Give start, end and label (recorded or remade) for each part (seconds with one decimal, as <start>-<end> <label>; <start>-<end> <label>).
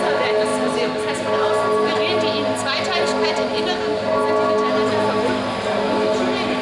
0.0-6.6 recorded